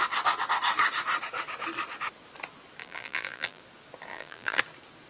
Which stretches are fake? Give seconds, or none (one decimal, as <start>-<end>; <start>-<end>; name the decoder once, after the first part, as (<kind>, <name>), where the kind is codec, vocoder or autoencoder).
2.8-3.6 (vocoder, BigVGAN v2); 4.1-4.6